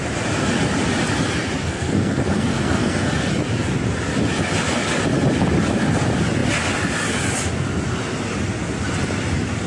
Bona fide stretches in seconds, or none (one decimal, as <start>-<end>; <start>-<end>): 0.0-1.6; 3.3-9.7